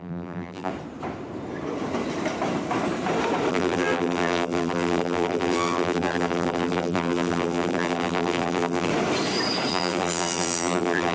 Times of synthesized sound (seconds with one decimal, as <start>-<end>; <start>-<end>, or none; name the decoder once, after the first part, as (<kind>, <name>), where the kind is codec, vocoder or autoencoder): 0.0-0.7 (vocoder, BigVGAN v2); 3.5-8.9; 9.7-11.1